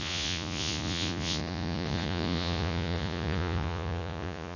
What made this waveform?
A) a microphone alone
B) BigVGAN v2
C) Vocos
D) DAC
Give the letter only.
C